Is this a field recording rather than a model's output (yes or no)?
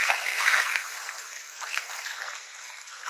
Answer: no